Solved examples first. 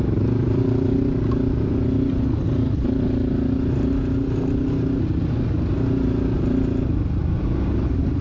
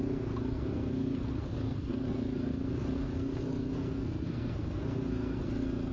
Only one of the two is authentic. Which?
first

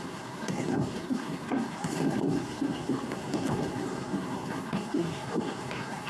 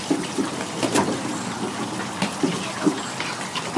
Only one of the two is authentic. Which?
second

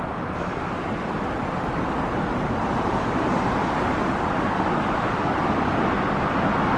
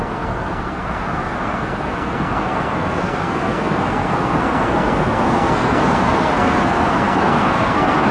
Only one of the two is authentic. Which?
first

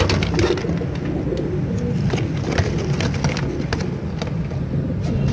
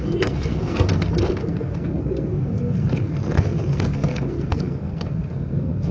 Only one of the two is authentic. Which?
first